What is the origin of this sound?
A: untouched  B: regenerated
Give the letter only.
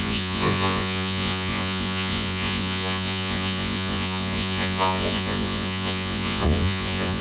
B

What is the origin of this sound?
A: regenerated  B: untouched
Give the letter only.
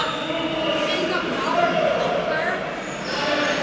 B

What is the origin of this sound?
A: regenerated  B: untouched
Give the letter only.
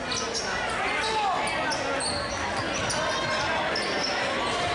B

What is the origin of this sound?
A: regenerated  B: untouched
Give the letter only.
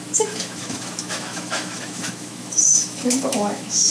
A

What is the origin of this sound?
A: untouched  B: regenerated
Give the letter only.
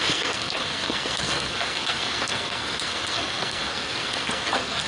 B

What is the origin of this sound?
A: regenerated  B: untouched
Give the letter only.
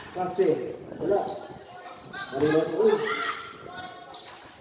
B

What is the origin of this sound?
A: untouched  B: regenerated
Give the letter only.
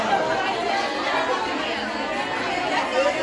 A